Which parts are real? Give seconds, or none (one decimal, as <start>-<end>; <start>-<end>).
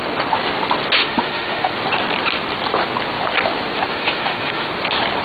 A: 0.0-1.0; 1.7-3.9; 4.7-5.2